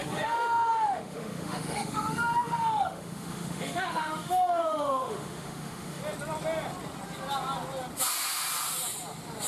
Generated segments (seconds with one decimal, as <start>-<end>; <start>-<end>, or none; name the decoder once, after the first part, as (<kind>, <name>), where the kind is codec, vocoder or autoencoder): 0.0-6.0 (autoencoder, DAC-VAE)